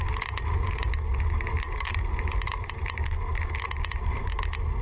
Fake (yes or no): no